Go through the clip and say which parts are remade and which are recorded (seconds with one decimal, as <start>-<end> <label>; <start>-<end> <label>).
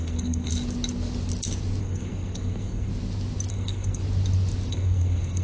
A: 0.0-0.5 remade; 0.5-1.8 recorded; 1.8-2.9 remade; 2.9-3.5 recorded; 3.5-4.0 remade; 4.0-4.7 recorded; 4.7-5.4 remade